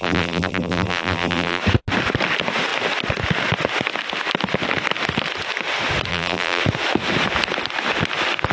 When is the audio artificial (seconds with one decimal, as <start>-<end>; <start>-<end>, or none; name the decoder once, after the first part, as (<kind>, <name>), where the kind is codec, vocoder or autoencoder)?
0.0-1.6 (vocoder, BigVGAN v2); 6.1-6.6